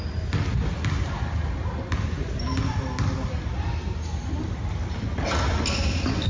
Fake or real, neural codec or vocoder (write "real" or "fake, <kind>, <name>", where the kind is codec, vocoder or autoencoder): real